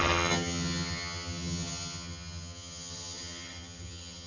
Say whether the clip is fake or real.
fake